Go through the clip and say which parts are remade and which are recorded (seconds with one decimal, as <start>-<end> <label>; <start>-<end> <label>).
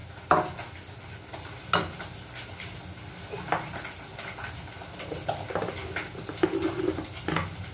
0.0-7.7 recorded